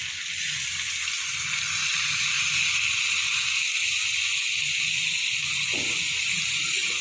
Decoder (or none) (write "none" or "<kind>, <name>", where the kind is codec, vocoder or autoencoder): none